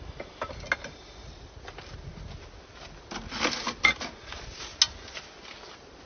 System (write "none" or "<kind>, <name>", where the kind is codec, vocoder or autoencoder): none